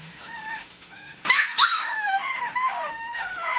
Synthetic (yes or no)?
yes